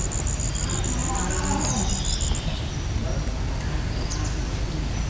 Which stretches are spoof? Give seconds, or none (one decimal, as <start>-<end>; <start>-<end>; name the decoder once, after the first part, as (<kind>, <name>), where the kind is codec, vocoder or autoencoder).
none